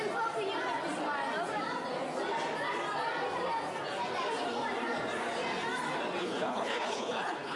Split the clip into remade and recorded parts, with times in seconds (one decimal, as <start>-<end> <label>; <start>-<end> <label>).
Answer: 0.0-6.2 recorded; 6.2-7.6 remade